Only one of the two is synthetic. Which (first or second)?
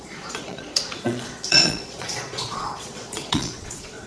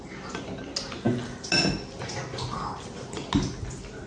first